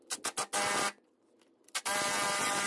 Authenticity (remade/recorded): recorded